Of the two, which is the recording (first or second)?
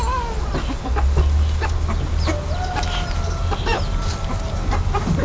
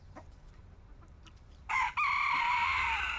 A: first